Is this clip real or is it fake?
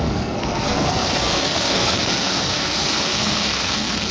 fake